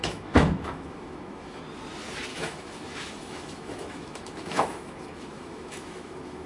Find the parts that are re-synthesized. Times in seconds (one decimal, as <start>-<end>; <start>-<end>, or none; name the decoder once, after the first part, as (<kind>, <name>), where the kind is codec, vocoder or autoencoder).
0.0-1.6 (autoencoder, DAC-VAE); 2.3-6.5